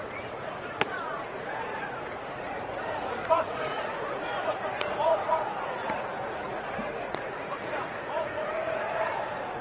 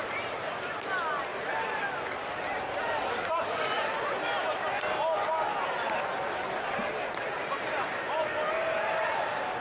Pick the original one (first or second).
second